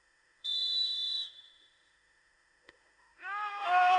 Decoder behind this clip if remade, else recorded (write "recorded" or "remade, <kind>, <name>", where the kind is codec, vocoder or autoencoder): remade, autoencoder, DAC-VAE